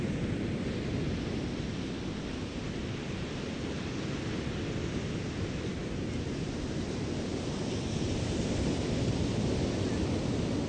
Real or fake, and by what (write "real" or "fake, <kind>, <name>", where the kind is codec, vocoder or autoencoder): real